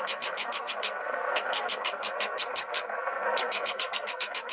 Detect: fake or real fake